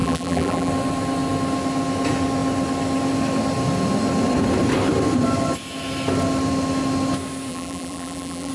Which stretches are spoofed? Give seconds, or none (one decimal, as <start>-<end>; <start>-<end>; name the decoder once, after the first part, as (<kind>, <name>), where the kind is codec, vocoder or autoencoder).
0.0-0.7 (vocoder, BigVGAN v2); 7.5-8.5